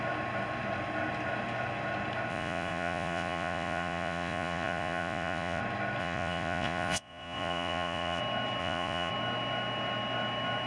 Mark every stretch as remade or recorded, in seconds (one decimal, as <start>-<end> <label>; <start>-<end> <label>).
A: 0.0-2.3 recorded; 2.3-5.6 remade; 5.6-6.0 recorded; 6.0-8.2 remade; 8.2-8.6 recorded; 8.6-9.1 remade; 9.1-10.7 recorded